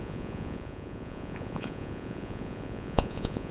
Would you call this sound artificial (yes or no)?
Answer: yes